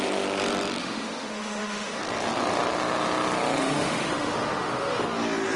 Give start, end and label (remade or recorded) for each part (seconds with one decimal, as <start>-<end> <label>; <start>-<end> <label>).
0.0-0.8 recorded; 0.8-2.0 remade; 2.0-3.6 recorded; 3.6-5.0 remade; 5.0-5.6 recorded